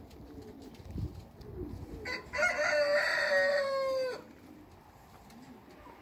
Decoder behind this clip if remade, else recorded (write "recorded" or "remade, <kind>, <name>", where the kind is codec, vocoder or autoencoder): recorded